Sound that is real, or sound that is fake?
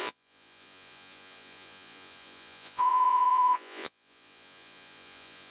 fake